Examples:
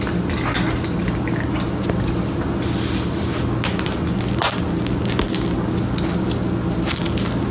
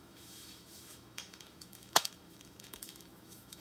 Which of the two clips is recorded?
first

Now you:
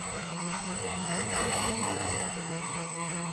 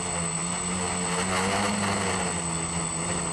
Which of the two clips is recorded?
second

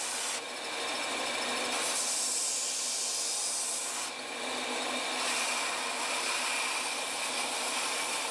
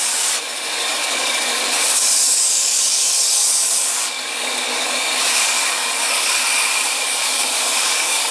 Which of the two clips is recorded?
first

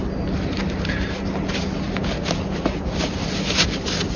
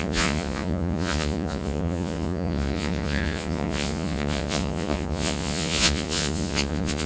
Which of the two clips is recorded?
first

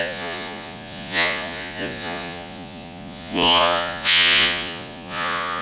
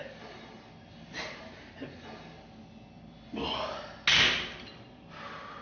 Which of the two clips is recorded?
second